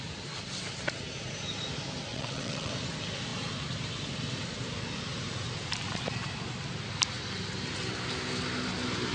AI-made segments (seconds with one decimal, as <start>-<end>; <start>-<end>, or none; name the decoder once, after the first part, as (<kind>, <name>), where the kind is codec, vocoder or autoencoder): 2.1-2.7 (vocoder, WaveNeXt)

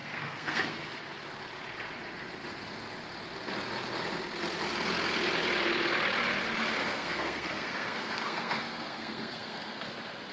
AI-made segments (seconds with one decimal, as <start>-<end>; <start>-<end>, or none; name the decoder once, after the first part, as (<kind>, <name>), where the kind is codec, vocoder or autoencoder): 0.0-0.8 (codec, SNAC); 6.8-9.9

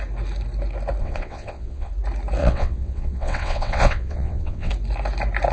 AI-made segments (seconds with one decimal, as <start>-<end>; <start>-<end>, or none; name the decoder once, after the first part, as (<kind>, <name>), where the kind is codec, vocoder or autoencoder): 1.0-1.9 (vocoder, WaveNeXt); 2.4-4.7

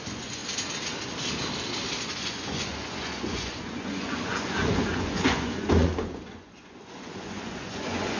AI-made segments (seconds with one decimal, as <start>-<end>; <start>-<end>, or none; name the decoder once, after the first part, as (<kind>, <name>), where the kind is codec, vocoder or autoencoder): 0.0-0.4 (vocoder, Vocos); 2.0-8.2

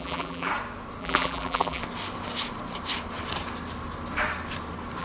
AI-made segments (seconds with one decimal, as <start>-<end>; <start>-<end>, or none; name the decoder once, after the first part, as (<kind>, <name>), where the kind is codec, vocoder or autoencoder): 0.0-0.5 (vocoder, BigVGAN v2); 1.0-1.8

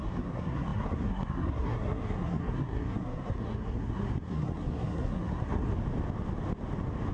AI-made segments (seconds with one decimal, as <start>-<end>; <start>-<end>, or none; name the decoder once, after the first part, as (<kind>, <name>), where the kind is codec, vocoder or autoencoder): 0.0-5.7 (codec, SNAC)

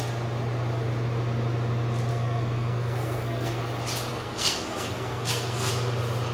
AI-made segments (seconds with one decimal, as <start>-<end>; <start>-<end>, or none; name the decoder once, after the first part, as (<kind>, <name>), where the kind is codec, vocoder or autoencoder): 2.1-3.6 (codec, SNAC); 4.1-5.7